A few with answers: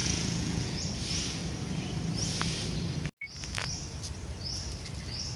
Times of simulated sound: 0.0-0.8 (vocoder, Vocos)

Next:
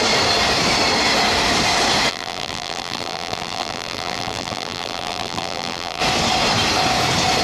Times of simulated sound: 2.1-6.0 (vocoder, BigVGAN v2)

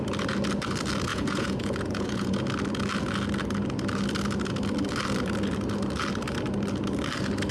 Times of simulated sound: 1.1-2.4 (vocoder, Vocos)

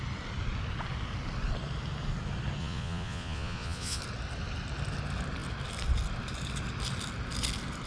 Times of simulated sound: 2.6-4.0 (vocoder, Vocos)

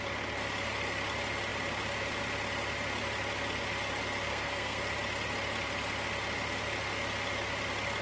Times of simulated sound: 4.3-4.8 (codec, SNAC)

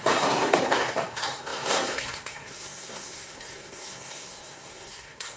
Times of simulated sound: 0.0-5.4 (codec, SNAC)

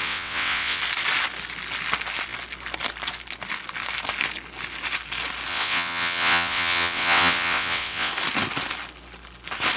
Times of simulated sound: 0.0-0.8 (vocoder, WaveNeXt); 5.5-8.1

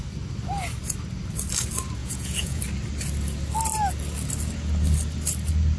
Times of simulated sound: 2.0-2.6 (vocoder, Vocos)